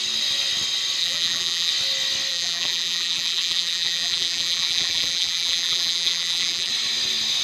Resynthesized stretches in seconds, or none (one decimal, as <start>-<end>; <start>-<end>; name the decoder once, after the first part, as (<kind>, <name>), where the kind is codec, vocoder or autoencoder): 1.0-1.7 (vocoder, BigVGAN v2); 2.3-6.7